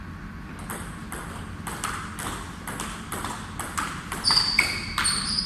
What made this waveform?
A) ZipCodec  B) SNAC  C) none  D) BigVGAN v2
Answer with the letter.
C